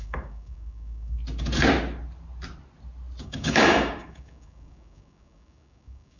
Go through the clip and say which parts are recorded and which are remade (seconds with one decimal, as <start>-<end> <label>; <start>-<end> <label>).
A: 0.0-1.2 remade; 1.2-3.2 recorded; 3.2-6.2 remade